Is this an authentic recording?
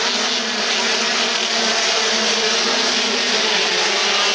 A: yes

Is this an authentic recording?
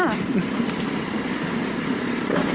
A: no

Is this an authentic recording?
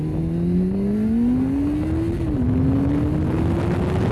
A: yes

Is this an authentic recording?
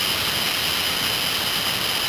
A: yes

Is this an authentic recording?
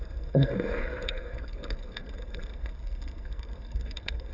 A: no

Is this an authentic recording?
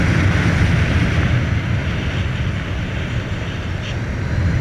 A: yes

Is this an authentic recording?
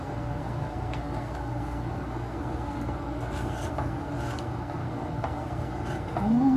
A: no